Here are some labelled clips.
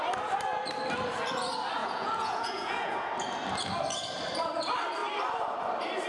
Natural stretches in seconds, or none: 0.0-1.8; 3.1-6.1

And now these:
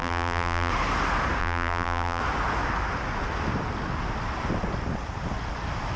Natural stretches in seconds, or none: 0.7-1.4; 2.2-6.0

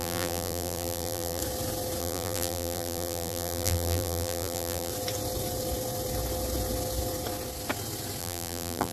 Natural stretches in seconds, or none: 1.4-2.0; 4.9-8.2

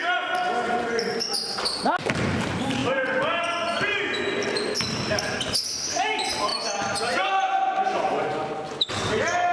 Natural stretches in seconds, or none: 0.0-9.5

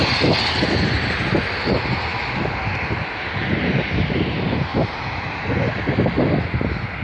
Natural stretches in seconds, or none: 0.0-7.0